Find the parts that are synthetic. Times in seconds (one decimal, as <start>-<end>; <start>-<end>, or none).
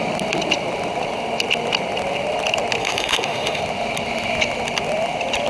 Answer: 2.8-3.6